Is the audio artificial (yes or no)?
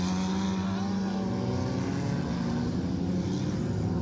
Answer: no